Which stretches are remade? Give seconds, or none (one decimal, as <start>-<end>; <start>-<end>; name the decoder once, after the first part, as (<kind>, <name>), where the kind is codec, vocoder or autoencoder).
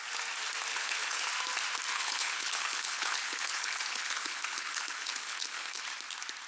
0.7-1.3 (codec, HILCodec); 1.9-5.8